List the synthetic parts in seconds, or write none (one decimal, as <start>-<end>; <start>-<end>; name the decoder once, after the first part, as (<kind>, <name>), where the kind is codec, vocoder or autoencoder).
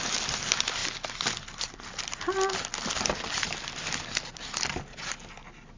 none